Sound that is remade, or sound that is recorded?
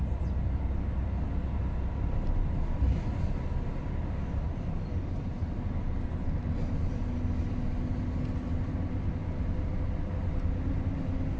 recorded